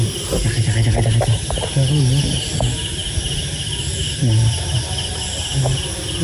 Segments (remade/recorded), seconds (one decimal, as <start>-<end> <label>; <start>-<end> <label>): 0.0-6.2 recorded